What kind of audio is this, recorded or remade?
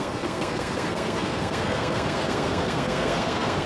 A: remade